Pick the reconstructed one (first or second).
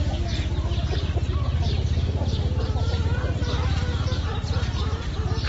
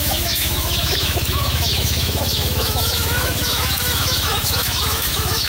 second